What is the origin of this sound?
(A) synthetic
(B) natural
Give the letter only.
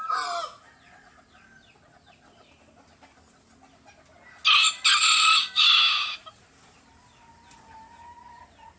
B